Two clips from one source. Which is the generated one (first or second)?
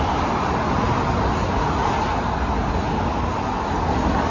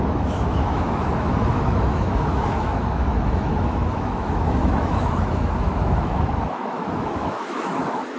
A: second